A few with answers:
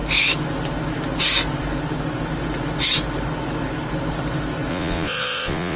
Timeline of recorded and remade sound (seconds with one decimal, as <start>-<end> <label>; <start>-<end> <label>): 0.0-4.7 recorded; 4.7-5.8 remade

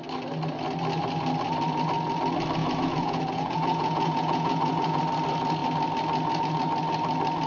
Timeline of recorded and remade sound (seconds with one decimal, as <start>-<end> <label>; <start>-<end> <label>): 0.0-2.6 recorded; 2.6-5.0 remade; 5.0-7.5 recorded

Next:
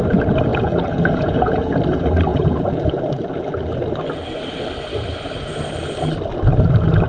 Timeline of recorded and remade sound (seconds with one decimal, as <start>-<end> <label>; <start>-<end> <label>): 0.0-0.5 recorded; 0.5-1.7 remade; 1.7-2.3 recorded; 2.3-3.0 remade; 3.0-7.1 recorded

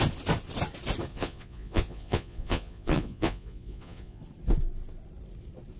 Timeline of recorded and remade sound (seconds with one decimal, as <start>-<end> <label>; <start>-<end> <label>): 0.0-1.1 recorded; 1.1-4.2 remade; 4.2-5.8 recorded

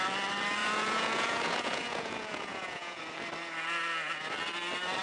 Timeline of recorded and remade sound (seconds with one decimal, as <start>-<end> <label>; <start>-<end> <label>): 0.0-0.6 recorded; 0.6-3.0 remade; 3.0-5.0 recorded

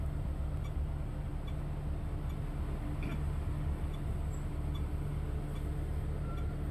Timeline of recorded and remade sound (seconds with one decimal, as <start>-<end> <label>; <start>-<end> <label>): 0.0-6.7 recorded

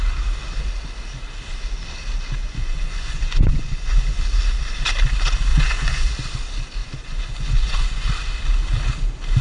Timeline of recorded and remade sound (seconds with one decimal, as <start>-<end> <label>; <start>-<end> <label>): 0.0-2.4 recorded; 2.4-4.2 remade; 4.2-5.5 recorded; 5.5-6.1 remade; 6.1-6.8 recorded; 6.8-8.1 remade; 8.1-9.4 recorded

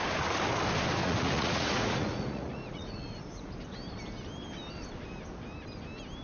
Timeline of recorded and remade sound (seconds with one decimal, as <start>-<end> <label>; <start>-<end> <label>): 0.0-1.0 recorded; 1.0-3.5 remade; 3.5-6.2 recorded